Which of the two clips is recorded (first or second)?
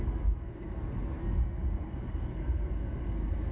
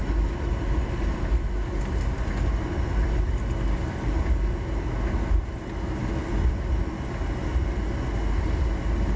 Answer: second